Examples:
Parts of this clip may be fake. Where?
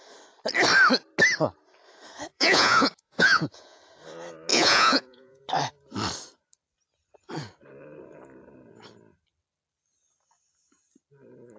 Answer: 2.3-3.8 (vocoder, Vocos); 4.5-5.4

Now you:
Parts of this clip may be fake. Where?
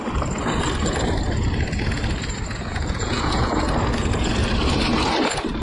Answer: 2.7-3.6 (vocoder, Vocos)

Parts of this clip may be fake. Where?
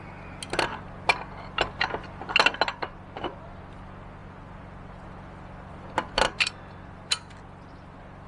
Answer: none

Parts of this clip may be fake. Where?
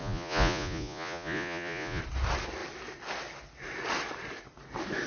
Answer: 0.0-2.0 (vocoder, Vocos)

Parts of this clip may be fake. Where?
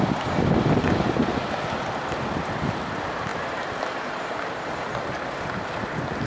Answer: none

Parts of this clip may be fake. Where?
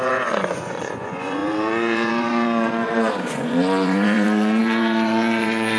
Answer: 0.0-5.8 (vocoder, Vocos)